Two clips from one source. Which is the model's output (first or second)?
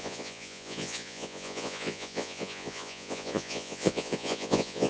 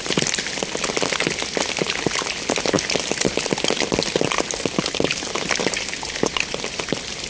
first